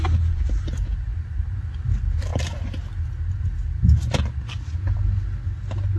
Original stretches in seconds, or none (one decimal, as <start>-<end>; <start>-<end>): 0.0-6.0